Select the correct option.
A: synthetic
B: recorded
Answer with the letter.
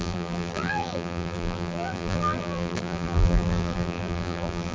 A